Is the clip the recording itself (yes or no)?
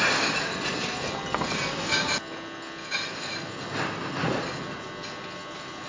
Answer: yes